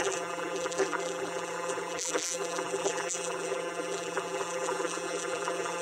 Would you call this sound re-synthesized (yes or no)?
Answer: yes